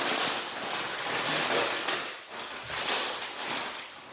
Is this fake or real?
real